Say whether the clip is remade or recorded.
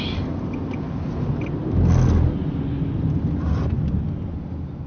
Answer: recorded